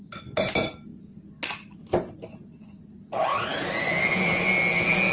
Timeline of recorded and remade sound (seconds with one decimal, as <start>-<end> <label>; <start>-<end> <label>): 0.0-5.1 recorded